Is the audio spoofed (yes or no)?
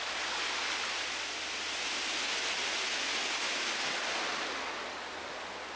no